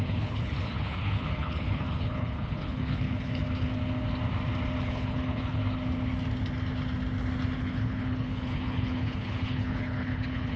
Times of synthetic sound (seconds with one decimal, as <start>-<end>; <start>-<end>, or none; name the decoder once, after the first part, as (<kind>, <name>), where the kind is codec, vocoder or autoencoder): 0.0-3.4 (codec, HILCodec); 4.8-5.6; 7.6-10.6